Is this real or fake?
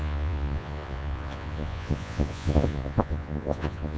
fake